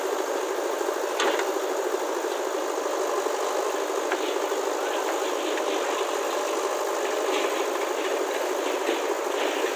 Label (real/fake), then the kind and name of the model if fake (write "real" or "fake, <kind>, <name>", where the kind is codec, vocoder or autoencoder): real